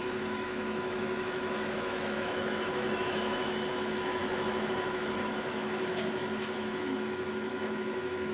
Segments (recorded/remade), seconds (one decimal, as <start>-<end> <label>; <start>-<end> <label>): 0.0-8.3 remade